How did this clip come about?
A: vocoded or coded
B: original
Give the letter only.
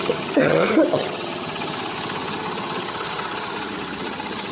A